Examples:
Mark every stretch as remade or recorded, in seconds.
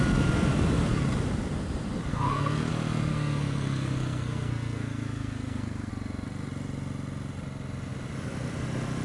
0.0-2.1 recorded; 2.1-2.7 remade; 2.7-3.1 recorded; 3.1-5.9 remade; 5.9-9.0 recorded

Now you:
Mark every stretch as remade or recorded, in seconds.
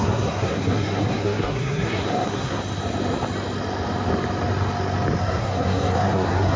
0.0-2.6 remade; 2.6-5.2 recorded; 5.2-6.6 remade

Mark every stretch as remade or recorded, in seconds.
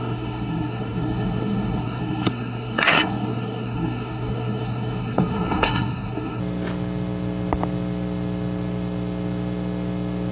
0.0-6.4 remade; 6.4-10.3 recorded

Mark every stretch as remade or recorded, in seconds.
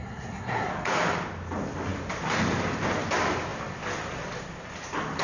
0.0-0.7 remade; 0.7-5.2 recorded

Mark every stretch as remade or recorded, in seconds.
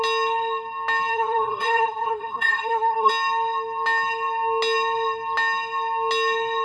0.0-1.1 recorded; 1.1-3.1 remade; 3.1-6.6 recorded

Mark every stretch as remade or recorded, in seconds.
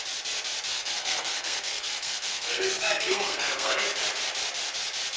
0.0-0.7 recorded; 0.7-3.8 remade; 3.8-5.2 recorded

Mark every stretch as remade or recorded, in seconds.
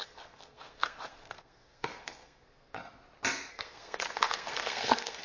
0.0-2.8 remade; 2.8-3.5 recorded; 3.5-5.2 remade